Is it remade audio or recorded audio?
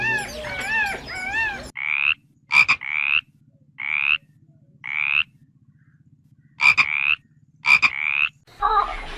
recorded